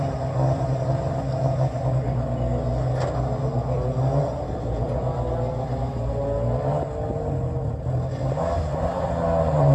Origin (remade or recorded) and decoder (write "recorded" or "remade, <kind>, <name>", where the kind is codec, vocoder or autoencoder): recorded